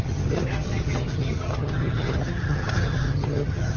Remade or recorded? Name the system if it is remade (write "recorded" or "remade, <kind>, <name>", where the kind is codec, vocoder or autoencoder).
remade, vocoder, HiFi-GAN